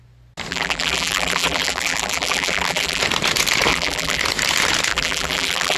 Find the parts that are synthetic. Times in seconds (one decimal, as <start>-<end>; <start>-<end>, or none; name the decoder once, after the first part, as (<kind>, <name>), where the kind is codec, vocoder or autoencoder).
0.5-3.0 (vocoder, BigVGAN v2); 3.7-4.2; 4.9-5.8